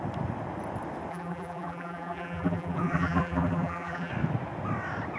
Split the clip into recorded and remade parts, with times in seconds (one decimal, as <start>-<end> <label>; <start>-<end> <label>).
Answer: 0.0-1.1 recorded; 1.1-4.1 remade; 4.1-5.2 recorded